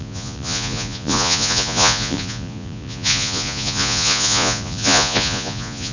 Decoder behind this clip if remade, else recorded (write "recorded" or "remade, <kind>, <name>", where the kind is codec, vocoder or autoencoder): remade, vocoder, Vocos